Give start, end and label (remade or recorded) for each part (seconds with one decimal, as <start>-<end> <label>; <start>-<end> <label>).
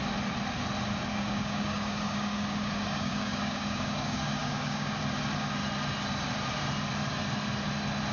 0.0-1.1 recorded; 1.1-5.0 remade; 5.0-8.1 recorded